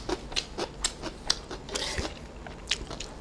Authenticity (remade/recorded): recorded